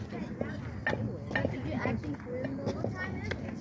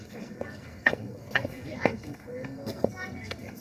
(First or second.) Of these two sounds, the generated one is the second